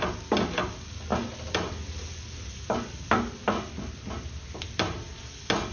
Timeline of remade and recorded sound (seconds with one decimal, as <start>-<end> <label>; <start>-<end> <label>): 0.0-5.7 recorded